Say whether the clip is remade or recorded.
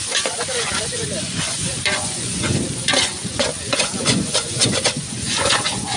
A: remade